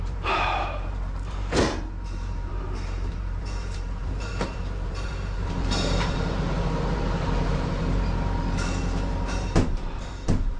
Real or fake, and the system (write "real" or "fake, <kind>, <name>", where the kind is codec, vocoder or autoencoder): fake, vocoder, BigVGAN v2